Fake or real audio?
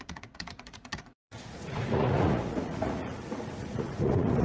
fake